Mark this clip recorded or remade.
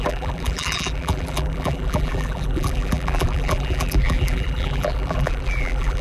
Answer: remade